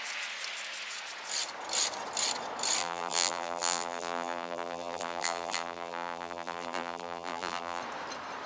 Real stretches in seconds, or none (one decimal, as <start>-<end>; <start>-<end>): 0.0-2.8; 7.8-8.5